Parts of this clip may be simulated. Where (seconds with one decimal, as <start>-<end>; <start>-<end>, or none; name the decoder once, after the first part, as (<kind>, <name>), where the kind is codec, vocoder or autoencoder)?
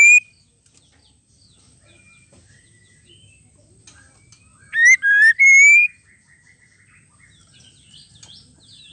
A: none